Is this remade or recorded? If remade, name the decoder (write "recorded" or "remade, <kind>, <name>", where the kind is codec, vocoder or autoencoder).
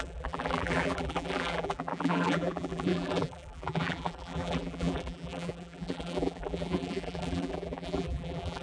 remade, vocoder, BigVGAN v2